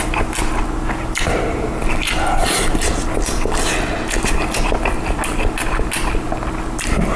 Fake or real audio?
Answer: real